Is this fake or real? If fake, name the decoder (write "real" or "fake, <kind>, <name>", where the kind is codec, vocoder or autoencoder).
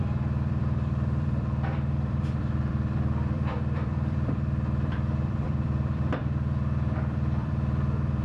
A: fake, vocoder, BigVGAN v2